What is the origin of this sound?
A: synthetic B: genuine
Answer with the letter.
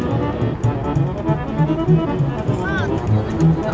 B